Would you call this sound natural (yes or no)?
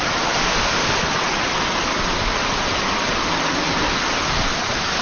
yes